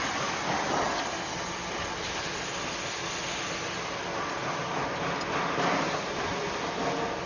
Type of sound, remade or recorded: recorded